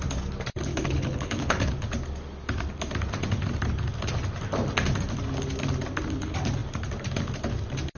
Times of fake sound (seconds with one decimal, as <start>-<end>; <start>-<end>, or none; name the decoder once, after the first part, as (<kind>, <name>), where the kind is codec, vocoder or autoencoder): 0.7-1.7 (codec, HILCodec)